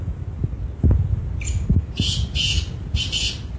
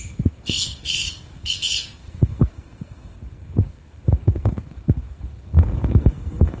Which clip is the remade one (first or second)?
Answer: second